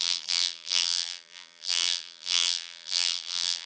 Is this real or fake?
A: fake